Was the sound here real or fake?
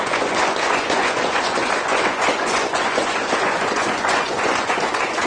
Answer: fake